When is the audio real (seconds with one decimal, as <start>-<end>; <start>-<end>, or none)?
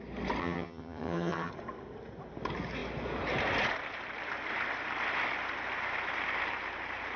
0.0-0.4; 1.5-7.2